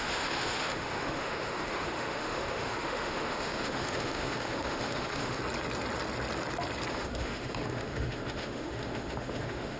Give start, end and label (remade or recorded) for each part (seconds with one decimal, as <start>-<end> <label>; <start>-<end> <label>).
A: 0.0-5.4 remade; 5.4-6.9 recorded; 6.9-9.8 remade